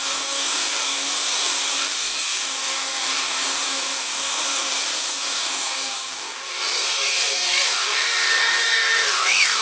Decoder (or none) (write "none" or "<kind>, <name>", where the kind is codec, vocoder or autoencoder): codec, DAC